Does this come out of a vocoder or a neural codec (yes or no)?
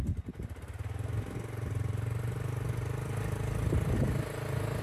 no